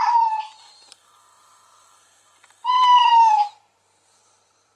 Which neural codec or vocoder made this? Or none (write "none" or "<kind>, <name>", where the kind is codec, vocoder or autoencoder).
vocoder, BigVGAN v2